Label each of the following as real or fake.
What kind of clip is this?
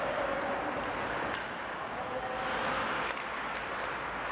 real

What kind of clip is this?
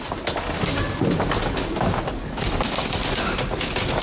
real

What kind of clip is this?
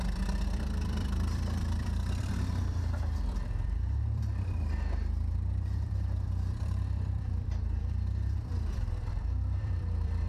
fake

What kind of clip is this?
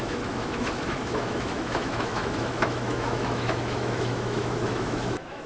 fake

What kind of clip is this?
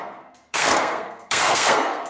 fake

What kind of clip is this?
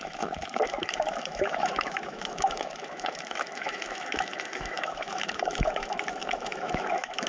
fake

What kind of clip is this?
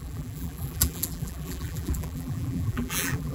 fake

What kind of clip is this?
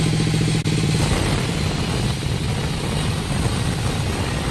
real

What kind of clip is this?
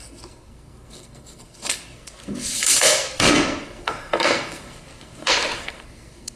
fake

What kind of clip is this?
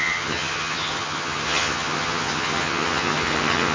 fake